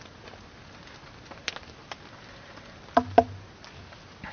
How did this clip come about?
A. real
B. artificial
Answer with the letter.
A